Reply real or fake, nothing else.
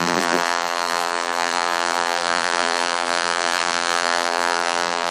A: fake